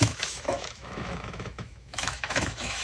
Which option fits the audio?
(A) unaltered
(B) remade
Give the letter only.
B